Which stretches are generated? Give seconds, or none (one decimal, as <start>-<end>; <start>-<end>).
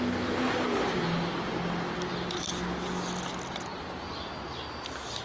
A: none